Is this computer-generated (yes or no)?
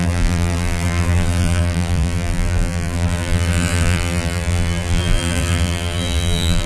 yes